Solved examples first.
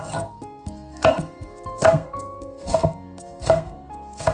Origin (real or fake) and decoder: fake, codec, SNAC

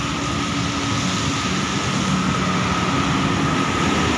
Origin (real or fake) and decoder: real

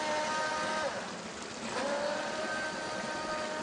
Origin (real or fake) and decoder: real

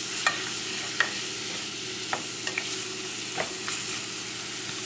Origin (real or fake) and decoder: real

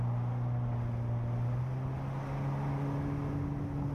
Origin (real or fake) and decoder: real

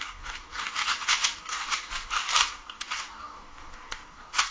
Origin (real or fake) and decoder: fake, codec, DAC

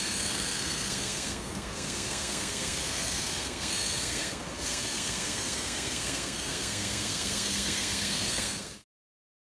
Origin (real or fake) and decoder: fake, codec, SNAC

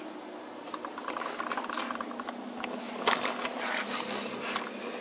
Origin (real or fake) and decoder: real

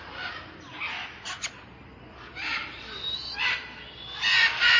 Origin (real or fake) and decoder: real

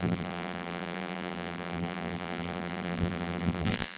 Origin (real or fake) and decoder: fake, vocoder, BigVGAN v2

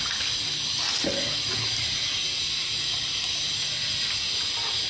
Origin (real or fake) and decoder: real